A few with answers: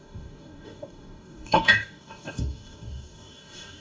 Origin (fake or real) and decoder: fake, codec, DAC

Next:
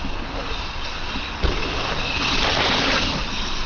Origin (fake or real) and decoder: real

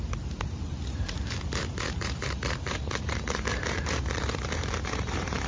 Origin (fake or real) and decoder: fake, vocoder, BigVGAN v2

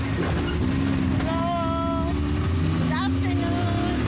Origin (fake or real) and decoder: real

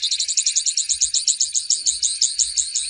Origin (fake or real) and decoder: real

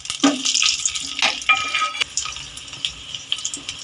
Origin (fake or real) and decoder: real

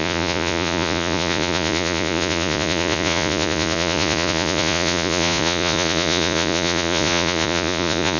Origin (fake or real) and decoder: fake, vocoder, Vocos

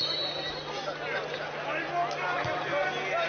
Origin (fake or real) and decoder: real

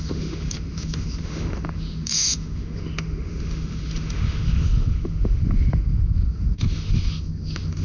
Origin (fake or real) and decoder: fake, autoencoder, DAC-VAE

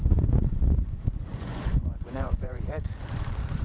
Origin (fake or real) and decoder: fake, vocoder, Vocos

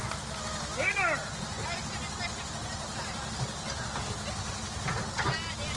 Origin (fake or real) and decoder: real